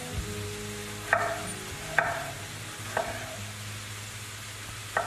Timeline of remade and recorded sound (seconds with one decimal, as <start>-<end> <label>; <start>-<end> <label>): 0.0-5.1 recorded